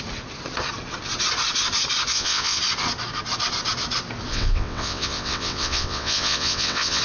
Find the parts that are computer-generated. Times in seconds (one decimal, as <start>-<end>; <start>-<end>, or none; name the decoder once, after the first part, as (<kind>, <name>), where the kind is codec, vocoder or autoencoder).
2.1-2.6 (vocoder, WaveNeXt); 4.3-7.0

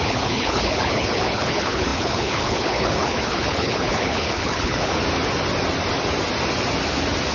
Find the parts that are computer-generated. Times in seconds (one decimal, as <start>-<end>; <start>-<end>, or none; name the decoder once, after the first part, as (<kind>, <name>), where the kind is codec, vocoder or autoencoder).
0.0-5.0 (codec, HILCodec)

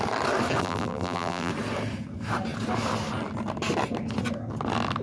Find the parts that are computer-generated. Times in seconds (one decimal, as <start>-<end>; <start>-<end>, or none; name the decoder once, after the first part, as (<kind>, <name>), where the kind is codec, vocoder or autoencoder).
0.6-1.5 (vocoder, BigVGAN v2)

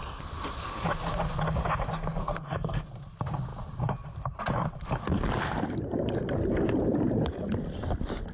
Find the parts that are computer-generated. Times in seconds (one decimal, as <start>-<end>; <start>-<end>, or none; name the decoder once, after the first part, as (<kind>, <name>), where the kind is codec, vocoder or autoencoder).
2.2-2.8 (codec, SNAC)

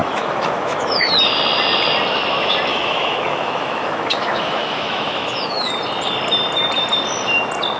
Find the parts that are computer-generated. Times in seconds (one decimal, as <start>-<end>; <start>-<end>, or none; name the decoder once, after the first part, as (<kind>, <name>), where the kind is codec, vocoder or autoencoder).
0.0-1.1 (autoencoder, DAC-VAE); 2.7-5.7

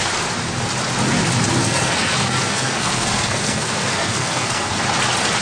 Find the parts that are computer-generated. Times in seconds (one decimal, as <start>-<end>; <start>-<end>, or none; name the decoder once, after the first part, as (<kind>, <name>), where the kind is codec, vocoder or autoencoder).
1.6-4.8 (codec, SNAC)

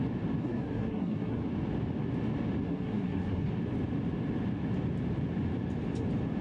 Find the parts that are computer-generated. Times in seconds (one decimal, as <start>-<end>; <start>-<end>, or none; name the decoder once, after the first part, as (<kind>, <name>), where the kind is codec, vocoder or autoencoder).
0.4-1.4 (codec, SNAC); 2.6-3.5